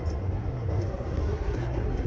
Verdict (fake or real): fake